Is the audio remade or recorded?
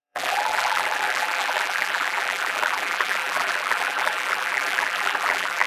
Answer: remade